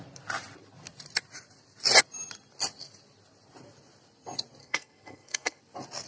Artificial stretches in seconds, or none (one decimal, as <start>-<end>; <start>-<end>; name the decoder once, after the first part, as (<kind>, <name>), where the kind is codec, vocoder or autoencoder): 4.6-5.6 (codec, SNAC)